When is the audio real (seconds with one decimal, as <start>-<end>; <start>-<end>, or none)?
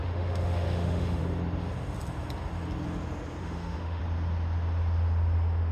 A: 1.2-3.4; 4.0-5.7